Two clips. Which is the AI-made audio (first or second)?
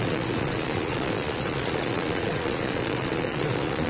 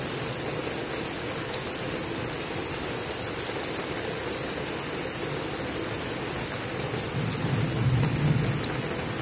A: first